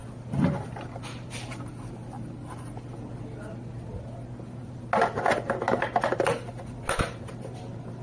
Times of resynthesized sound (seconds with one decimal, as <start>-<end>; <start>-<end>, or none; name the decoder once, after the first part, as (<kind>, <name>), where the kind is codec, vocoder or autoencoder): none